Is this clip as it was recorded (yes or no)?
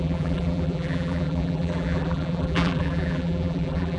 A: no